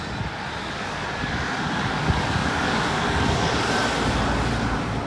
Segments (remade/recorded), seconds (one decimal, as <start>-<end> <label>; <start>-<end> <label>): 0.0-0.6 recorded; 0.6-3.7 remade; 3.7-5.1 recorded